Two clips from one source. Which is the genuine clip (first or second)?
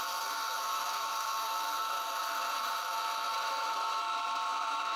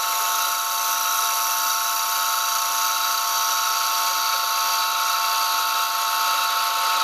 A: second